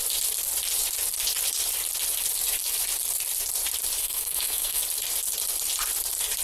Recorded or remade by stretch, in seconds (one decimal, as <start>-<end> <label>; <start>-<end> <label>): 0.0-4.0 recorded; 4.0-4.8 remade; 4.8-6.4 recorded